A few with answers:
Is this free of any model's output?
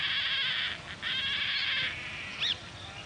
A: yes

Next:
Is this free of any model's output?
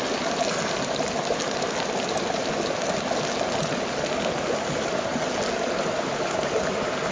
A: yes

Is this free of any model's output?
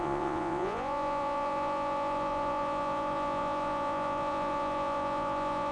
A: no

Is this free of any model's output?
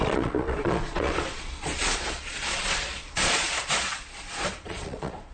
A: no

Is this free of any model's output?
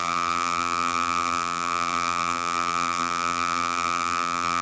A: no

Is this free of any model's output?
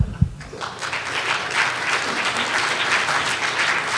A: yes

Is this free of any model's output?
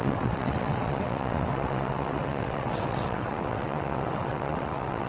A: no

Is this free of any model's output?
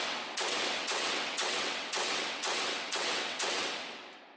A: no